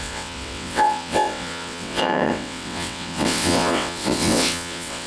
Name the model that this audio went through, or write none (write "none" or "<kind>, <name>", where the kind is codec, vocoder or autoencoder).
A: vocoder, WaveNeXt